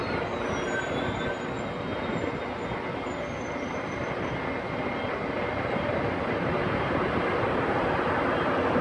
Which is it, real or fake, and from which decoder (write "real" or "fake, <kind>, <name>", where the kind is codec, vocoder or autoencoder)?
real